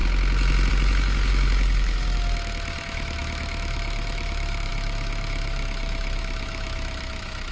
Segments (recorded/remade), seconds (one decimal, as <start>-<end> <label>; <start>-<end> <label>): 0.0-0.7 recorded; 0.7-7.5 remade